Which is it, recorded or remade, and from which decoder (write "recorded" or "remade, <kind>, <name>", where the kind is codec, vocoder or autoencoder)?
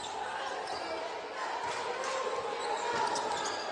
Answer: recorded